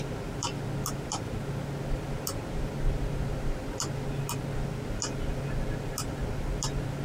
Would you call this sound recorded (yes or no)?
yes